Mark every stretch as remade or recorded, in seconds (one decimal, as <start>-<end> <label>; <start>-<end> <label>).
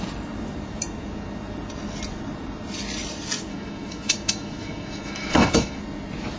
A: 0.0-3.5 recorded; 3.5-5.8 remade; 5.8-6.4 recorded